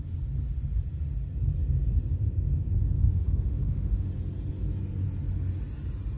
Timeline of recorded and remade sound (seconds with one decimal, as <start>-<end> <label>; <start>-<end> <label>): 0.0-3.0 recorded; 3.0-4.1 remade; 4.1-6.2 recorded